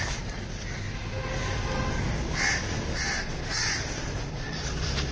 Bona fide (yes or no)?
yes